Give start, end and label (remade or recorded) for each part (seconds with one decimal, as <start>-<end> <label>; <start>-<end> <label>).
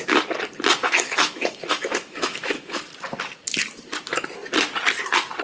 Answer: 0.0-0.8 recorded; 0.8-2.8 remade; 2.8-5.4 recorded